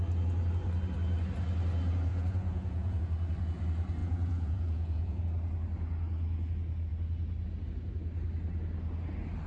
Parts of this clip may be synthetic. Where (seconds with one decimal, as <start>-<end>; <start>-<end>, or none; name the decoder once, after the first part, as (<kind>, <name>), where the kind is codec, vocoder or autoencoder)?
2.1-3.0 (vocoder, Vocos); 4.0-5.2